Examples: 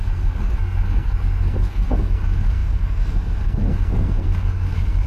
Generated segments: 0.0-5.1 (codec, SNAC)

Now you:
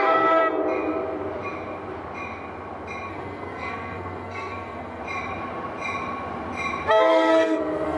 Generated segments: 0.0-0.4 (codec, SNAC); 3.1-5.0; 7.1-8.0

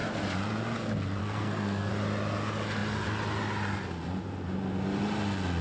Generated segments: 1.2-1.9 (codec, SNAC)

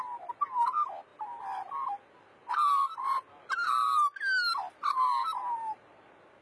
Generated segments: none